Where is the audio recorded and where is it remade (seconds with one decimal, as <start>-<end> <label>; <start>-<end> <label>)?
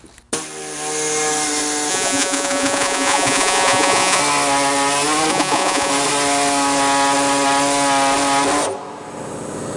0.0-1.9 recorded; 1.9-4.2 remade; 4.2-5.3 recorded; 5.3-5.9 remade; 5.9-9.8 recorded